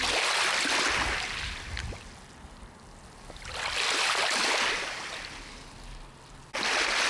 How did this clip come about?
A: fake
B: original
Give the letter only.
B